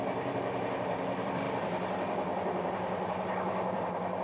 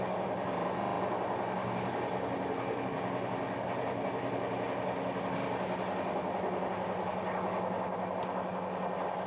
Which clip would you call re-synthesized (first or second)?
first